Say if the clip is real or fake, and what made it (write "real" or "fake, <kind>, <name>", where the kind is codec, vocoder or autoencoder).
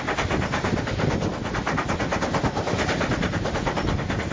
real